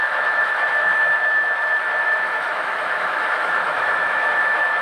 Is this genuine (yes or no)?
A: no